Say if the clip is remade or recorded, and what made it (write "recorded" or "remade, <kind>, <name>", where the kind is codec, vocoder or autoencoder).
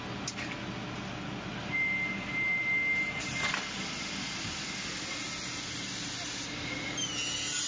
recorded